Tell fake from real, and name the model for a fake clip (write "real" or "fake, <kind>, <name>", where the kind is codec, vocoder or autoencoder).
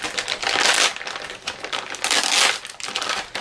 real